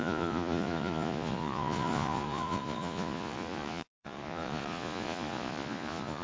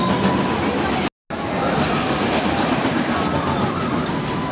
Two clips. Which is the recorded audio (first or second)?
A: second